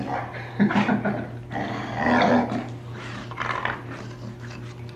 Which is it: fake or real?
real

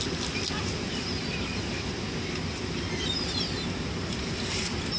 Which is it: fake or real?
fake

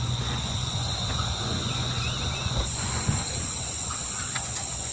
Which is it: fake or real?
fake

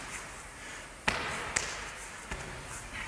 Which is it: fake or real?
real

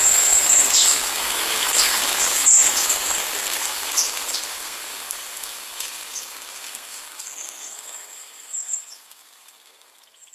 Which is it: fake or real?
fake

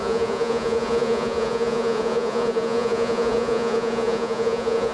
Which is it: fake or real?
fake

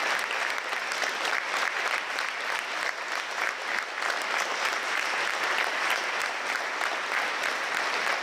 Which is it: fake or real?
real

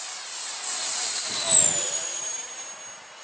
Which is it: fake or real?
real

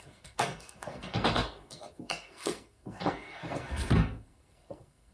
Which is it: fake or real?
fake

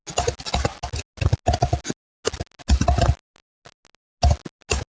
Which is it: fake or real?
real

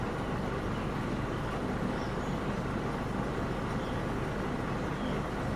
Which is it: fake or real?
real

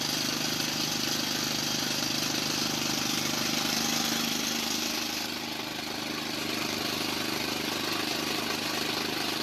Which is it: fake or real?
real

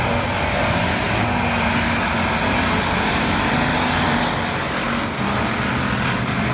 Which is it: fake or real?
real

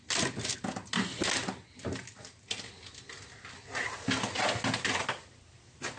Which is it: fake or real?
real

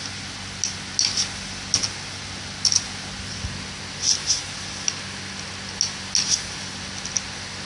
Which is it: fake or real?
real